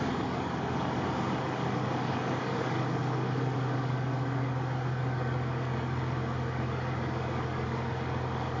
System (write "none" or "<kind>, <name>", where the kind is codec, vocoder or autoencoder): codec, DAC